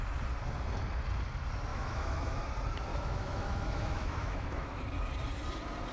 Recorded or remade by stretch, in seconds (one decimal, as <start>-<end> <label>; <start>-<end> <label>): 0.0-1.7 recorded; 1.7-2.4 remade; 2.4-2.9 recorded; 2.9-4.8 remade; 4.8-5.9 recorded

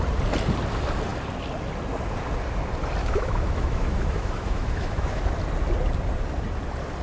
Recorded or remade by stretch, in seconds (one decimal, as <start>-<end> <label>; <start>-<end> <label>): 0.0-3.0 recorded; 3.0-5.2 remade; 5.2-7.0 recorded

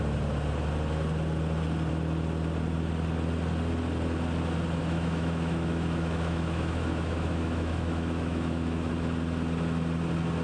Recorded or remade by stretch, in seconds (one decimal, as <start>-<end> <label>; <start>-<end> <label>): 0.0-4.8 recorded; 4.8-8.9 remade; 8.9-10.4 recorded